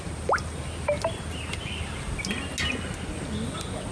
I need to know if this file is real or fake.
real